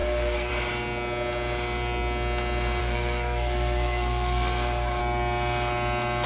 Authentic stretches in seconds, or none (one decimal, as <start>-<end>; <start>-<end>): 0.5-2.8; 5.0-6.3

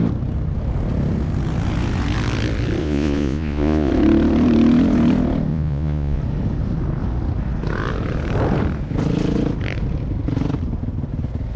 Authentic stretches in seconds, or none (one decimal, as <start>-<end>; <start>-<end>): 0.0-2.8; 3.9-5.5; 6.2-11.6

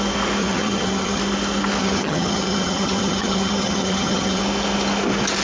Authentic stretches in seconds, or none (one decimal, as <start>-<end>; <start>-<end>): 0.0-0.4; 1.2-1.8; 4.4-5.4

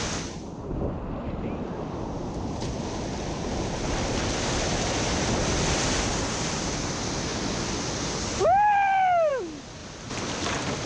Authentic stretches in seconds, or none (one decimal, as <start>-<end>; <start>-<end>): 0.0-10.9

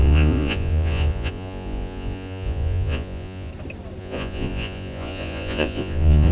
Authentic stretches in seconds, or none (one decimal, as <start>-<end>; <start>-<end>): 3.5-4.0

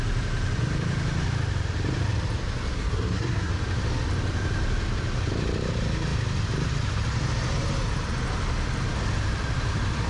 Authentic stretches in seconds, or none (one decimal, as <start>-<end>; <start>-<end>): 0.0-2.7; 3.5-10.1